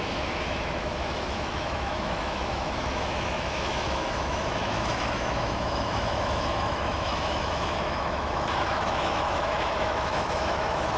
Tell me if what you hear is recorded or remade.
remade